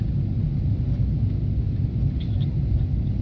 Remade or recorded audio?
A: recorded